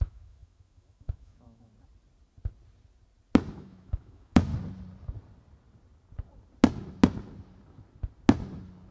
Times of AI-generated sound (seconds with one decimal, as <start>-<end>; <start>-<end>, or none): 0.0-1.7; 3.5-4.5